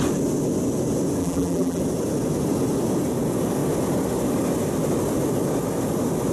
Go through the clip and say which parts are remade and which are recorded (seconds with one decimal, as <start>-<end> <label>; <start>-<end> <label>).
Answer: 0.0-1.2 recorded; 1.2-1.8 remade; 1.8-6.3 recorded